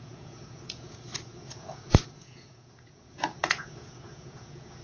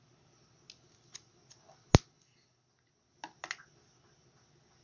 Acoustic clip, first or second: second